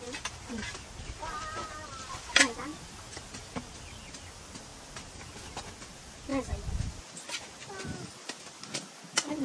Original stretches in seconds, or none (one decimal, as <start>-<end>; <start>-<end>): 0.0-9.4